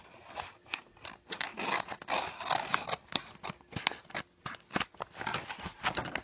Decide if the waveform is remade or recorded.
recorded